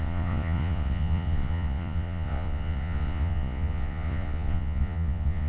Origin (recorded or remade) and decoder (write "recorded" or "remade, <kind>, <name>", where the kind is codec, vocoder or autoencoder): remade, vocoder, Vocos